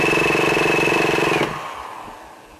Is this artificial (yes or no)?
no